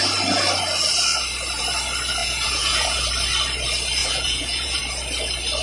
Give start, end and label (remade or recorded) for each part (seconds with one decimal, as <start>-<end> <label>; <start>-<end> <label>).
0.0-2.2 recorded; 2.2-3.1 remade; 3.1-4.0 recorded; 4.0-4.8 remade; 4.8-5.6 recorded